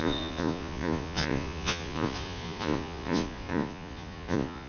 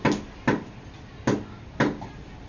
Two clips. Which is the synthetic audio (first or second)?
first